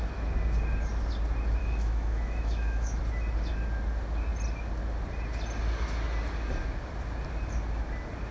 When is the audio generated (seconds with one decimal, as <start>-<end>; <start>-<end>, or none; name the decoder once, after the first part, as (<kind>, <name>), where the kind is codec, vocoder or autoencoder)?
1.6-3.0 (autoencoder, DAC-VAE)